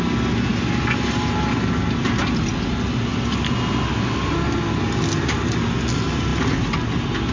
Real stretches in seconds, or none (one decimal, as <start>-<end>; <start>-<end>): 0.0-7.3